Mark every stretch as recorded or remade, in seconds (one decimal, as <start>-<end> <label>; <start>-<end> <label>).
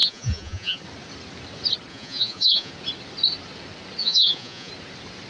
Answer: 0.0-0.8 remade; 0.8-1.9 recorded; 1.9-2.7 remade; 2.7-4.0 recorded; 4.0-4.7 remade; 4.7-5.3 recorded